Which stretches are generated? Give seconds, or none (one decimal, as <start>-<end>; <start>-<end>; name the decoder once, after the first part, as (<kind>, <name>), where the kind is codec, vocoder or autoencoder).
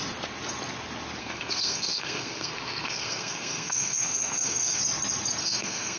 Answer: 1.2-4.8 (codec, SNAC); 5.4-6.0